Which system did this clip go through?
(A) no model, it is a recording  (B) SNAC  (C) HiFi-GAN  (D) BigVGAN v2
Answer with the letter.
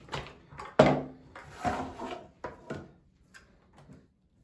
A